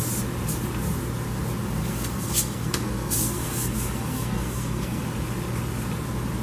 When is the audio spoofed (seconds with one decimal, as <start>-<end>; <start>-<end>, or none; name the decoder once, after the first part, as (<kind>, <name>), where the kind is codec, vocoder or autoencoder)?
1.8-5.0 (codec, SNAC)